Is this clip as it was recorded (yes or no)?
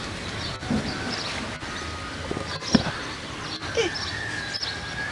yes